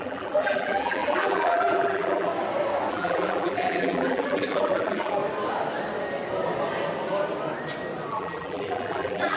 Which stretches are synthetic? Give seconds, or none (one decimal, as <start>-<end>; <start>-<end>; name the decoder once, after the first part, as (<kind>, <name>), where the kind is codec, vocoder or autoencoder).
0.0-2.3 (vocoder, BigVGAN v2); 2.9-5.2; 8.1-9.4